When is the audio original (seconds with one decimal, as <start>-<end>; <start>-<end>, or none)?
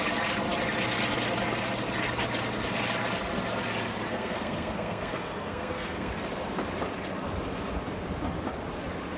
0.0-4.1; 6.1-9.2